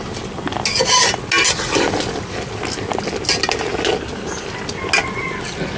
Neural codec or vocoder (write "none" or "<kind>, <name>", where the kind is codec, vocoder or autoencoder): none